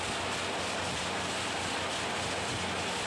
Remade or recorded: recorded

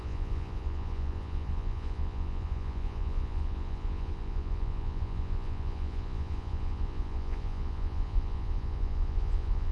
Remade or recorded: remade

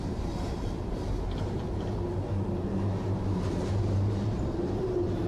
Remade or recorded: remade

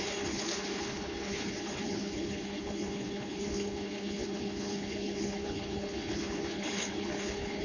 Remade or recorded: remade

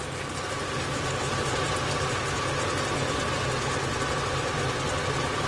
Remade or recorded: recorded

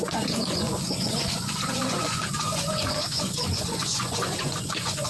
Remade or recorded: remade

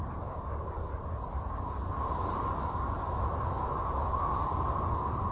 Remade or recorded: recorded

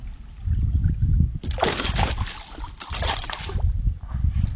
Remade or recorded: recorded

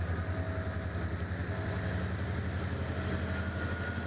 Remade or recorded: recorded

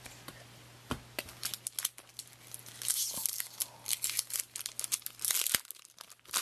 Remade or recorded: recorded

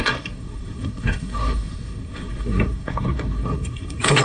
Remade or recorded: remade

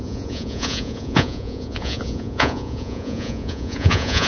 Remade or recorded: remade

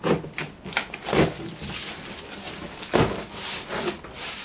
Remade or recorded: recorded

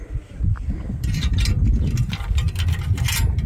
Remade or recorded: recorded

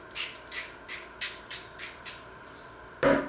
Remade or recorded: remade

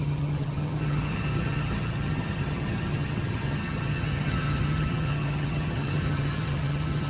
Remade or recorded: remade